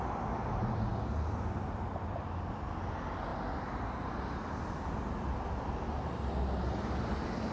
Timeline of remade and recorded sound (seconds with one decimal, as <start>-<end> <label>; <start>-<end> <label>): 0.0-7.5 recorded